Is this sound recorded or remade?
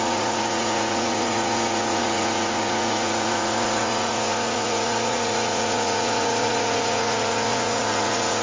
remade